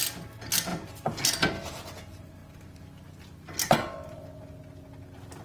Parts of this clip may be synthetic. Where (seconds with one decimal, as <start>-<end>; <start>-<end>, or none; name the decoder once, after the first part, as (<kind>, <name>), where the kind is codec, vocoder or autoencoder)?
none